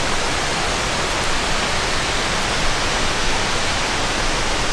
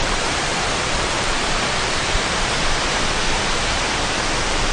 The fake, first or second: second